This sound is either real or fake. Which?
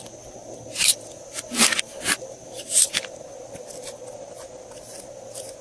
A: real